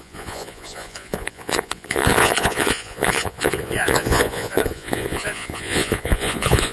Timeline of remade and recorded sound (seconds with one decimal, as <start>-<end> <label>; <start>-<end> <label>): 0.0-6.7 remade